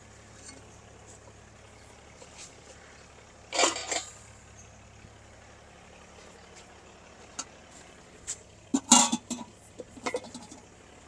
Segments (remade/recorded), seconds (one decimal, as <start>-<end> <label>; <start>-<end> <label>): 0.0-11.1 recorded